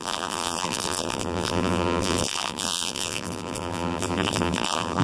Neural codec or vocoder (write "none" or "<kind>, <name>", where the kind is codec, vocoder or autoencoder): vocoder, BigVGAN v2